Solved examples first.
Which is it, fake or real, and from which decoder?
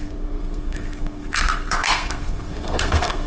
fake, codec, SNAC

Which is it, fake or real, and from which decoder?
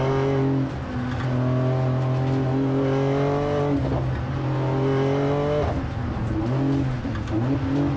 real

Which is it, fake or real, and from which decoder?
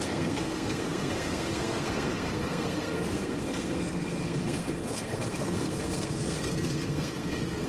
fake, codec, SNAC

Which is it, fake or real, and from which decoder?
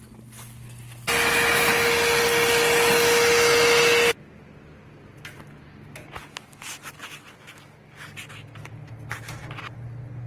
real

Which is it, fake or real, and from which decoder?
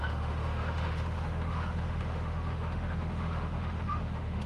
fake, autoencoder, DAC-VAE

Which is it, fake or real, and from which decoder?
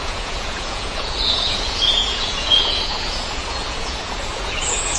fake, vocoder, Vocos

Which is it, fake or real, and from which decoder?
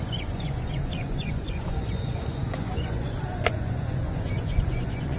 fake, vocoder, Vocos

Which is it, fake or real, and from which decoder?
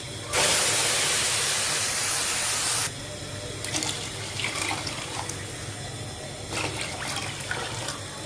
real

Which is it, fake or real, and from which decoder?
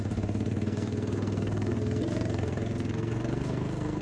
fake, codec, SNAC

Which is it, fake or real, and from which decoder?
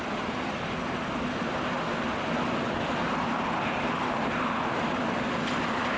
real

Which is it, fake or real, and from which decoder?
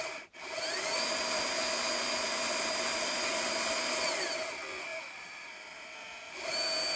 real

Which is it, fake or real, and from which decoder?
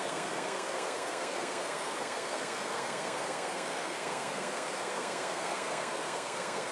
fake, codec, SNAC